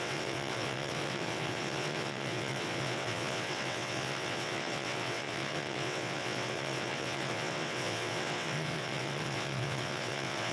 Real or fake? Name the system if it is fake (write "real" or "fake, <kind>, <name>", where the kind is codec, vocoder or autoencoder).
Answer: fake, vocoder, WaveNeXt